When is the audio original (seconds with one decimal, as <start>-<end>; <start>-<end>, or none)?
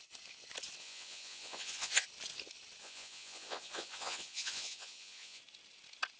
0.0-0.8; 2.0-2.8; 5.4-6.2